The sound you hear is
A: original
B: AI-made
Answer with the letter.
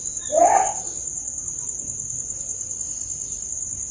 A